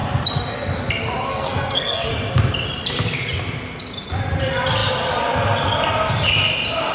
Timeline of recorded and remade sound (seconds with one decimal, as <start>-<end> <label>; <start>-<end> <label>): 0.0-1.3 recorded; 1.3-2.1 remade; 2.1-6.9 recorded